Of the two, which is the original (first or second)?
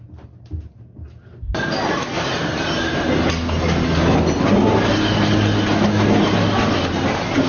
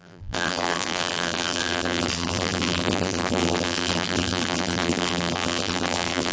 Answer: first